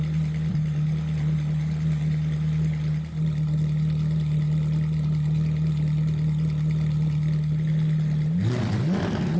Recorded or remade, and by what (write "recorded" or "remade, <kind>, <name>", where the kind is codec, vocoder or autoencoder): recorded